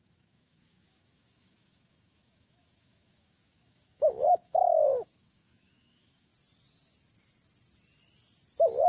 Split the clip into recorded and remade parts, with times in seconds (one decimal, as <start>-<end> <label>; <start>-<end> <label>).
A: 0.0-6.3 remade; 6.3-8.9 recorded